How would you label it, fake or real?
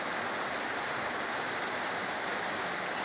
real